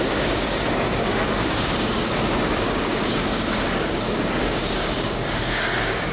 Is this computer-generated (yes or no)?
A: yes